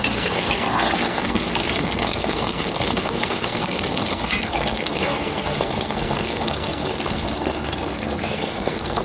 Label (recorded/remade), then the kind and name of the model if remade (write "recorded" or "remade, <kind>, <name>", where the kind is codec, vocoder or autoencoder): remade, codec, SNAC